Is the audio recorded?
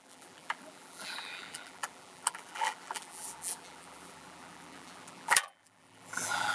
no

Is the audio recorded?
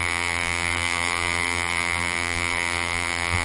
no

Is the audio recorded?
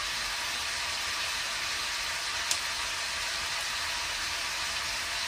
yes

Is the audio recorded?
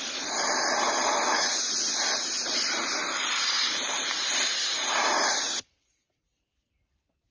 no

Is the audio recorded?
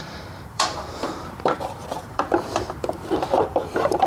no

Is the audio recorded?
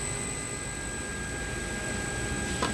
yes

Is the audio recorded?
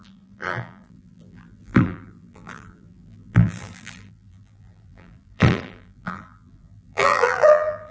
no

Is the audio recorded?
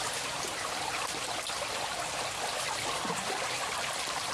yes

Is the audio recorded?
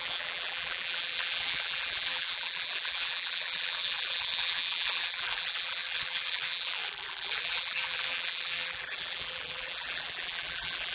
no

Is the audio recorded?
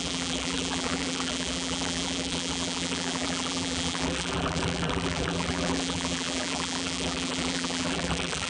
no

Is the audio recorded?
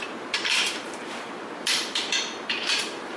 no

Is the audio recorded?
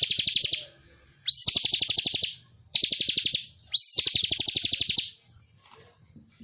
yes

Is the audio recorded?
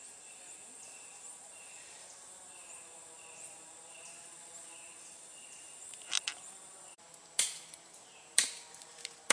no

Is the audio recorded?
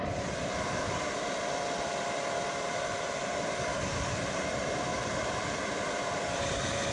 no